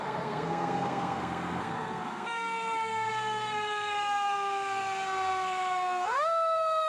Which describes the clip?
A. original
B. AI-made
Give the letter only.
B